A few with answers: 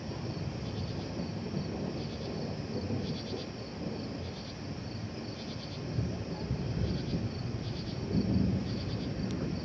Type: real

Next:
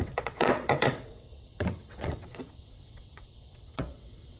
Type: fake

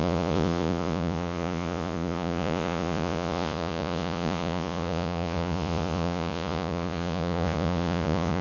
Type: fake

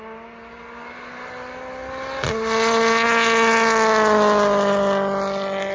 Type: real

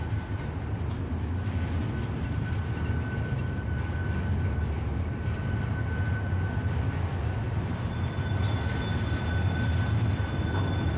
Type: real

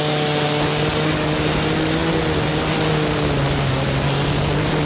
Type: real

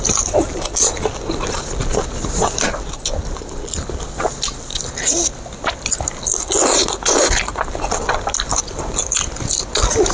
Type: real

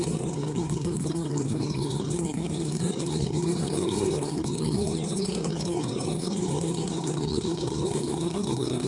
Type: fake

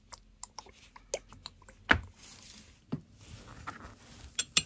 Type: real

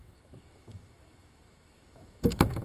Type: fake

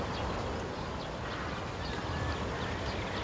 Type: real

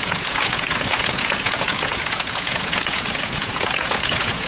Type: fake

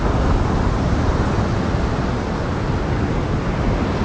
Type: real